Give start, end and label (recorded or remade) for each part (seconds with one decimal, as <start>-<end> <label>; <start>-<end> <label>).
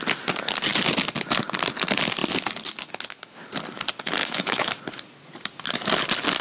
0.0-4.2 recorded; 4.2-4.7 remade; 4.7-6.4 recorded